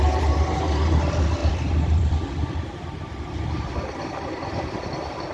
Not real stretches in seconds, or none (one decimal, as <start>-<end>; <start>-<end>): 1.4-4.6